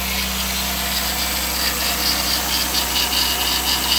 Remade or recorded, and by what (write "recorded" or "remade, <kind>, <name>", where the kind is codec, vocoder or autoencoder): recorded